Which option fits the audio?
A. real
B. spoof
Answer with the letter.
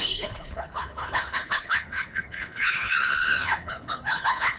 B